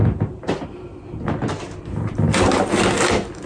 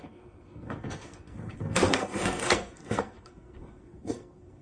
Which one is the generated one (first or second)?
second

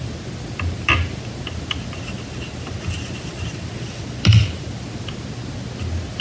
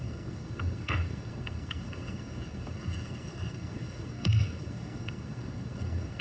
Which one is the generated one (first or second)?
second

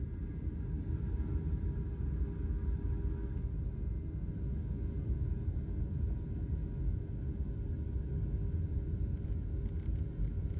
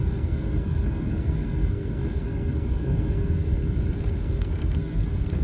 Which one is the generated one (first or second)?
second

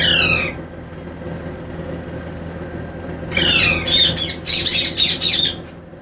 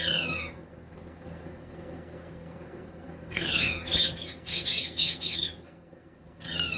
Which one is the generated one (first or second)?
second